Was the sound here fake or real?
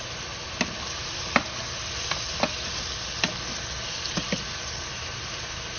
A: real